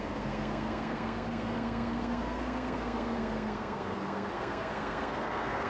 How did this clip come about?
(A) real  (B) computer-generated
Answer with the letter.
B